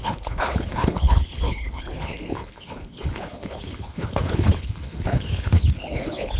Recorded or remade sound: remade